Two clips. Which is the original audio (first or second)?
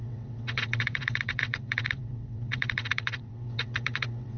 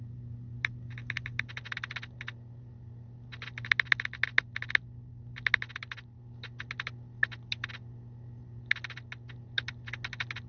second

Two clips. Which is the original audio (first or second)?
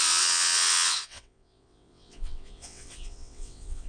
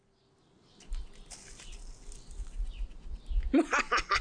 second